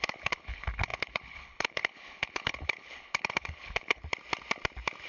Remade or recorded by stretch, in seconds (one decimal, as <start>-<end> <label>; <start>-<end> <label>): 0.0-4.0 remade; 4.0-5.1 recorded